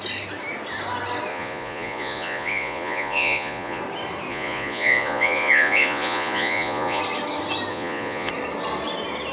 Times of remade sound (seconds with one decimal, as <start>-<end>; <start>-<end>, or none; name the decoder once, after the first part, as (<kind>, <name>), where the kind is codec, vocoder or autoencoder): 1.3-3.8 (vocoder, Vocos); 4.3-7.0; 7.7-8.3